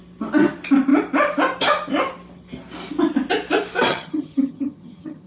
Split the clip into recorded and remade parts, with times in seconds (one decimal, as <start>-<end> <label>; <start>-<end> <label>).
0.0-3.9 recorded; 3.9-5.3 remade